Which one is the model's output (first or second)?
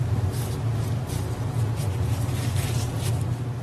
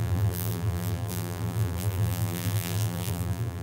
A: second